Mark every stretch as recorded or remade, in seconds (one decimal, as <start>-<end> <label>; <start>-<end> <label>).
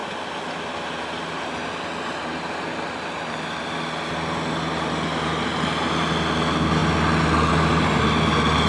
0.0-8.7 recorded